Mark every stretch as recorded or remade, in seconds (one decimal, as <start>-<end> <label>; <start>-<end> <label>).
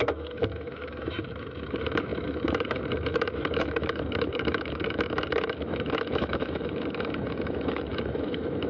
0.0-8.7 remade